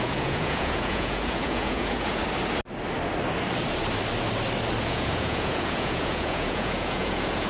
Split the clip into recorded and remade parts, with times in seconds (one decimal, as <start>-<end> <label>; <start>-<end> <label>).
0.0-2.2 remade; 2.2-4.8 recorded; 4.8-7.5 remade